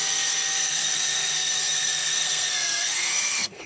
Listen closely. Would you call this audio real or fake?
fake